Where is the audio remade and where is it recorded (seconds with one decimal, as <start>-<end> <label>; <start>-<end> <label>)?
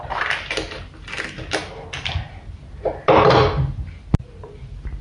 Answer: 0.0-5.0 recorded